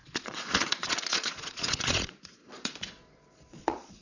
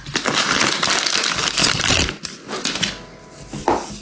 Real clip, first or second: second